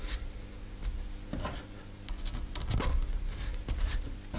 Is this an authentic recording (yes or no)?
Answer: yes